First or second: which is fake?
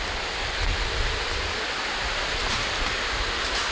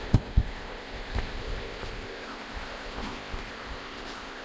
second